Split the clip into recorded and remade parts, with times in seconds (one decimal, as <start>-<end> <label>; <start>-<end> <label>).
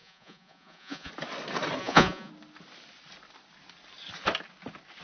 0.0-1.1 remade; 1.1-1.8 recorded; 1.8-2.3 remade; 2.3-5.0 recorded